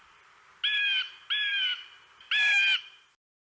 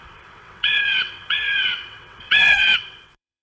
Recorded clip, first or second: first